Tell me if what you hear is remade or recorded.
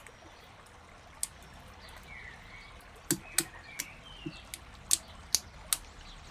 recorded